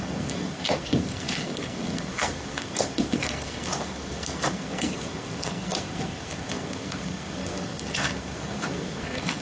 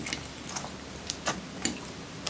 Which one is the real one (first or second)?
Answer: second